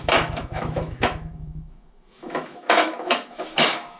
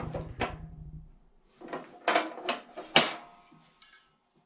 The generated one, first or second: first